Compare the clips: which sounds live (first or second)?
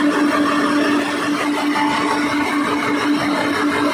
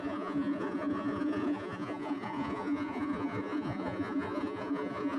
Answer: first